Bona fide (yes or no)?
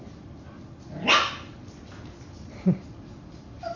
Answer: yes